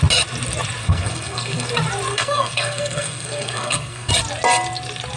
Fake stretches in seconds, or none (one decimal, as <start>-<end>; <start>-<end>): 0.8-1.7; 2.1-4.1